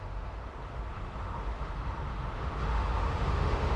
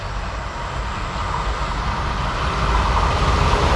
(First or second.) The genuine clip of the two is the second